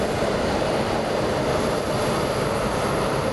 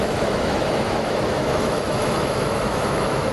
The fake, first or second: second